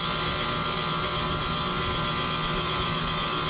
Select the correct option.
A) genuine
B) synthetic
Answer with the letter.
A